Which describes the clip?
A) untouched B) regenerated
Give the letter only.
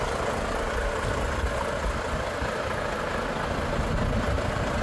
A